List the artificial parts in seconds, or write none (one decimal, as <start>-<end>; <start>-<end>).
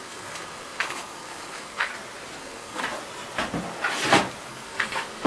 0.0-1.9; 2.4-2.8; 4.5-5.3